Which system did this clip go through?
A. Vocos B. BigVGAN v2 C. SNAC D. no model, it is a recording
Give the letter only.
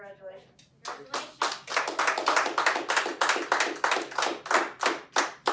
D